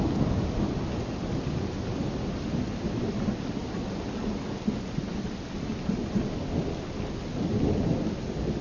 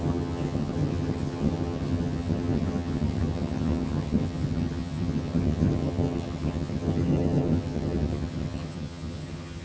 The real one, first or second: first